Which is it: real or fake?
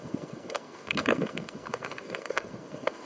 fake